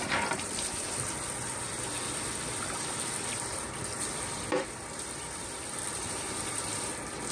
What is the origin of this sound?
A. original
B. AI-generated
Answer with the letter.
B